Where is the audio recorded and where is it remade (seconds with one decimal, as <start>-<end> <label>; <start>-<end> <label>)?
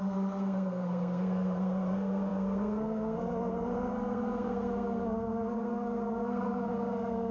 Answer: 0.0-7.3 remade